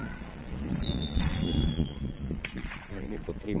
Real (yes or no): no